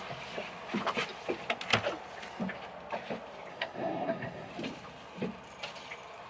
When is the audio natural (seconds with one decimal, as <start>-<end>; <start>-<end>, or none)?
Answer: 0.0-3.5; 4.5-6.3